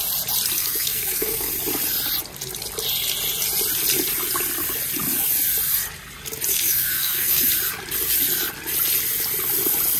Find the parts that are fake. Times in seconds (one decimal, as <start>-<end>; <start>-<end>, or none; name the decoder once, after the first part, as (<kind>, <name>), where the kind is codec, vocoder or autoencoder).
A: 0.6-1.5 (codec, SNAC); 6.5-7.5